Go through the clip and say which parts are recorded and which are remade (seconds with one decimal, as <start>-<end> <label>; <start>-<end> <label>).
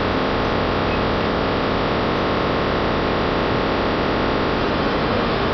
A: 0.0-4.6 recorded; 4.6-5.5 remade